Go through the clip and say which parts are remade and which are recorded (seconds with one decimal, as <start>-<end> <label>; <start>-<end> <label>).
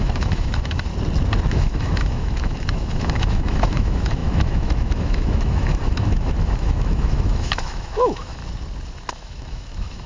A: 0.0-0.9 remade; 0.9-1.5 recorded; 1.5-8.4 remade; 8.4-9.1 recorded; 9.1-10.1 remade